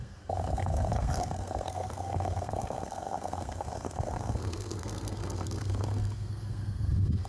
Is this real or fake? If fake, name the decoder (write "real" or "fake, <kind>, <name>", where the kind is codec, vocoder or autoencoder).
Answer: fake, codec, SNAC